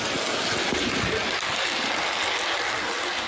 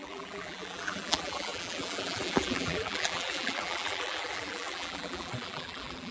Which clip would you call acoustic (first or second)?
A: first